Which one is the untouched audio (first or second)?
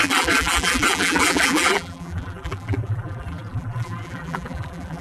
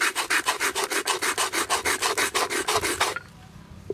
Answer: second